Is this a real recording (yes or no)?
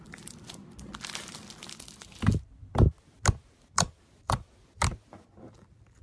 yes